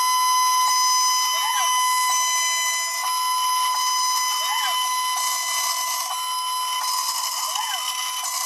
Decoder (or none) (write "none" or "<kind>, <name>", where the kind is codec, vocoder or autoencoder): none